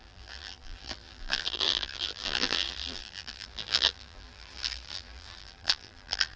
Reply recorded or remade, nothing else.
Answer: remade